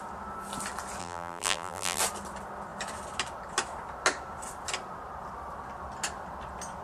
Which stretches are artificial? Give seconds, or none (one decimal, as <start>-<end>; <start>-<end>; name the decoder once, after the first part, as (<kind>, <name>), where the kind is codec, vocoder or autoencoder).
1.0-2.0 (vocoder, BigVGAN v2)